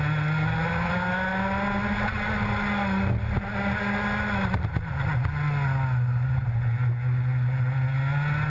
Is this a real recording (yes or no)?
yes